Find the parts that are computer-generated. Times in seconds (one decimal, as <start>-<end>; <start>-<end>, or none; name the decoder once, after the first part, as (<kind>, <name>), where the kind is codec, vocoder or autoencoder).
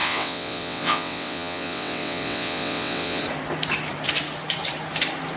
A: 0.0-3.2 (vocoder, WaveNeXt)